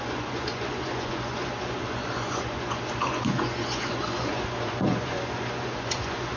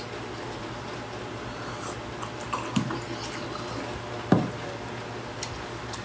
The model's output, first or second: first